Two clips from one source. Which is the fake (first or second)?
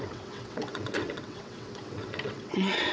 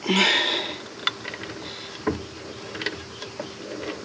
first